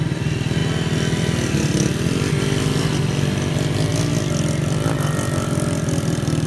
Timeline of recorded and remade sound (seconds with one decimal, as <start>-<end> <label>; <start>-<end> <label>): 0.0-0.6 remade; 0.6-2.3 recorded; 2.3-3.9 remade; 3.9-4.6 recorded; 4.6-6.5 remade